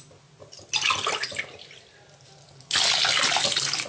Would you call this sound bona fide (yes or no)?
yes